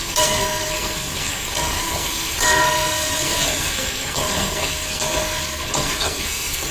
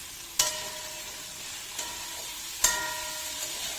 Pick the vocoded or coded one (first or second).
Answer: first